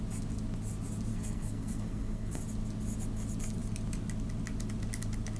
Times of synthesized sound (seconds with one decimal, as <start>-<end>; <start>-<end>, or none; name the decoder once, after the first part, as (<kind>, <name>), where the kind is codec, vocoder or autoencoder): 1.1-2.4 (codec, SNAC)